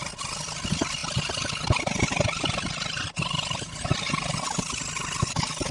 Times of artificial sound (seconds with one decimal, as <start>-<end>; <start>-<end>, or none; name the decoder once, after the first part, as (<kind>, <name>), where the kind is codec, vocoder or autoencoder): none